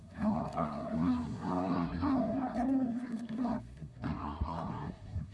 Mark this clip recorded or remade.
remade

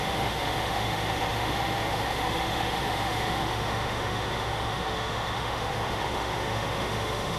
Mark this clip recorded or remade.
remade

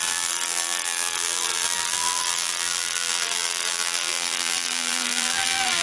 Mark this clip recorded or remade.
remade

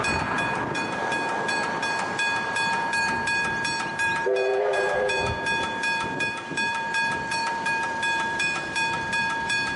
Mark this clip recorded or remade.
remade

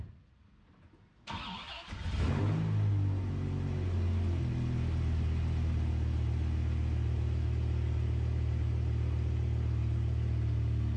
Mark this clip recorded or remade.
recorded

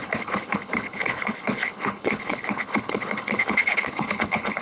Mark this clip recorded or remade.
remade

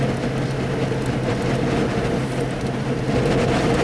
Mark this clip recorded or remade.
recorded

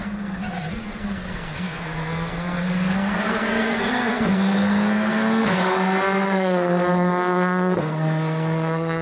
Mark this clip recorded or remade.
remade